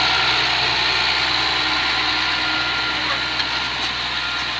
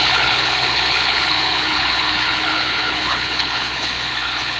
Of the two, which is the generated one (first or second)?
second